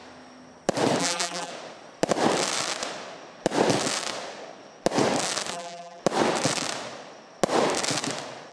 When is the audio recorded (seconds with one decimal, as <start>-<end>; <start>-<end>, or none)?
0.0-1.0; 1.5-5.5; 6.0-8.5